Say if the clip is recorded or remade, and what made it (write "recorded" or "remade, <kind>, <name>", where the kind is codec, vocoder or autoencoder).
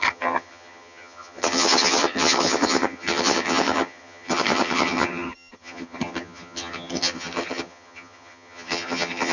remade, vocoder, HiFi-GAN